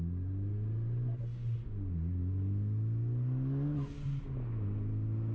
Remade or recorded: recorded